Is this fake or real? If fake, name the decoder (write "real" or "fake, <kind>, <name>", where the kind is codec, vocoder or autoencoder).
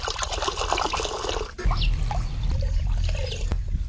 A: real